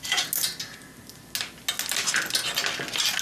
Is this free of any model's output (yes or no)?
yes